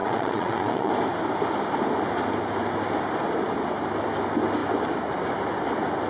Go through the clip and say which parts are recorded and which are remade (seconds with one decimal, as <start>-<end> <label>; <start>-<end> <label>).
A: 0.0-0.9 remade; 0.9-6.1 recorded